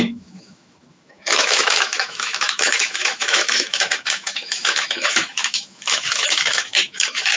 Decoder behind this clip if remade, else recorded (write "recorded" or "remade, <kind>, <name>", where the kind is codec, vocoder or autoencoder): remade, autoencoder, DAC-VAE